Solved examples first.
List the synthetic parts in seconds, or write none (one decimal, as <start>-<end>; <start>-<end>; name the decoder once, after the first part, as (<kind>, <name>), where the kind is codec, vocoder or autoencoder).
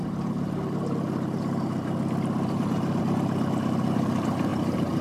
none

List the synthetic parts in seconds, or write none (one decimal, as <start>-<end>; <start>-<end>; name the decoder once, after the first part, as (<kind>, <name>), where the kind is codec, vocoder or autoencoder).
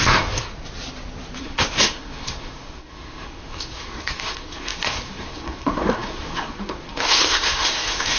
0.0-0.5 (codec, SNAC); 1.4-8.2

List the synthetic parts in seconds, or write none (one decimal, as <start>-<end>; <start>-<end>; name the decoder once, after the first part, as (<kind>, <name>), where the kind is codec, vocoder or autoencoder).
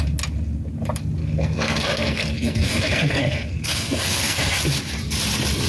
1.2-4.6 (codec, SNAC)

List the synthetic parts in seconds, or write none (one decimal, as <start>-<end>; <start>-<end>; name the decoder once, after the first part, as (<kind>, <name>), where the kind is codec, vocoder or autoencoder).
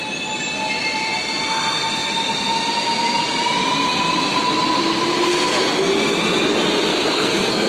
6.9-7.7 (codec, SNAC)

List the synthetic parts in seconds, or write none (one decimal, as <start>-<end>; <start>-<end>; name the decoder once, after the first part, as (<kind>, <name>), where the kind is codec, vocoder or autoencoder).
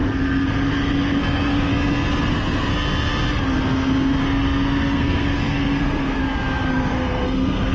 0.0-1.7 (codec, SNAC); 2.3-2.7; 4.2-6.2; 6.7-7.7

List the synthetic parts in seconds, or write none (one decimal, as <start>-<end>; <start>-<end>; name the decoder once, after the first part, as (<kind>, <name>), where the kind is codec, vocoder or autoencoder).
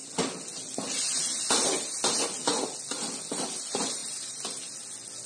none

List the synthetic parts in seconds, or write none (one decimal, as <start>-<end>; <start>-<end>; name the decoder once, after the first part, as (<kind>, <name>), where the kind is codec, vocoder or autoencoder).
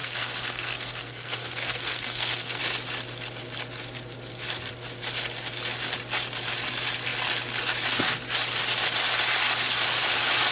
0.0-2.6 (codec, SNAC)